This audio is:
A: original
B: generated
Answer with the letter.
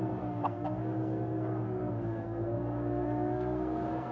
B